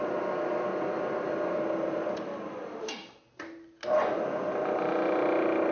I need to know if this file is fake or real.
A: real